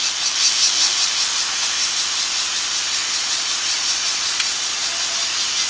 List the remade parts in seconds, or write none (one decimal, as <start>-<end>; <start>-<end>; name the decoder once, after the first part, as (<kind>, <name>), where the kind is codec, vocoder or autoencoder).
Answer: 3.0-4.9 (vocoder, Vocos)